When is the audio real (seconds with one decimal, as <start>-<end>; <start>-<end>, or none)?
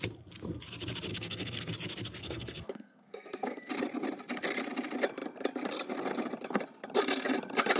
0.0-1.1; 1.7-2.2; 3.7-7.8